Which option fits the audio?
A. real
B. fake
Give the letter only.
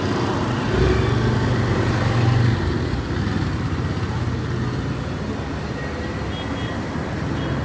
A